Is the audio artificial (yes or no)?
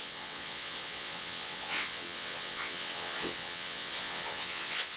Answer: yes